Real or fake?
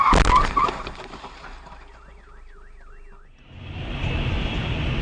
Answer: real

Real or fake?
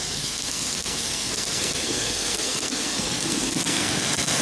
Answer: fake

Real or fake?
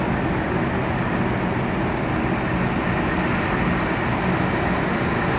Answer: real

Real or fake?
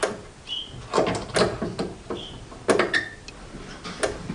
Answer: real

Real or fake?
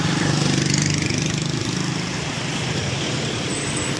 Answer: fake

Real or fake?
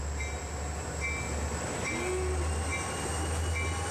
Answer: real